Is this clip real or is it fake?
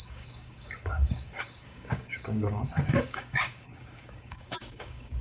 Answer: fake